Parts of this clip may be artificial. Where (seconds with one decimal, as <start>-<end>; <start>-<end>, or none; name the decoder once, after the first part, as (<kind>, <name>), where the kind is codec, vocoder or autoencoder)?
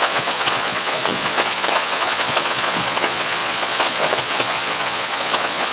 0.0-5.7 (vocoder, Vocos)